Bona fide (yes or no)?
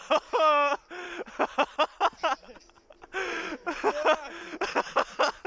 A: yes